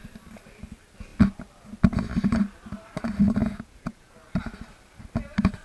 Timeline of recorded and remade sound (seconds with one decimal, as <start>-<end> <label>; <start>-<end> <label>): 0.0-3.4 recorded; 3.4-4.1 remade; 4.1-5.6 recorded